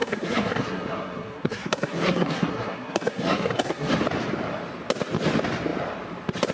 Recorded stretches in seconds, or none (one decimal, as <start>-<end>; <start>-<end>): 3.9-6.5